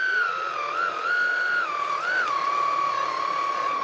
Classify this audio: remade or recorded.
recorded